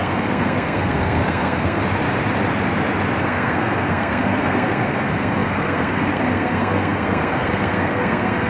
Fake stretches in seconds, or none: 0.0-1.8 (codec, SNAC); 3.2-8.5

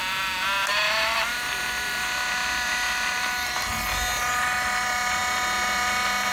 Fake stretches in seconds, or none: none

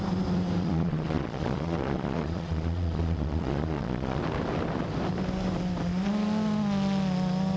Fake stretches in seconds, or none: 0.6-4.2 (vocoder, Vocos)

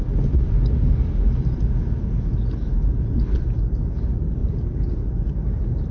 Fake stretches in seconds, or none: none

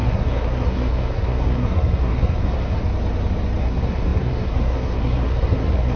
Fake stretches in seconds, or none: 0.0-2.8 (codec, SNAC); 3.6-6.0